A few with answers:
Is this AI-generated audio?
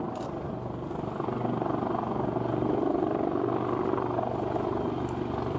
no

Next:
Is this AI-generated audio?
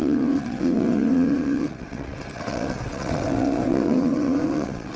yes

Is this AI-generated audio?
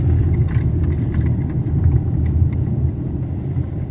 no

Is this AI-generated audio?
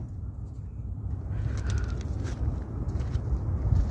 no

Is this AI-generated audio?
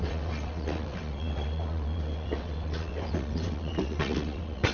yes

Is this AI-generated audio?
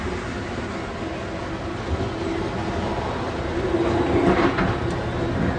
no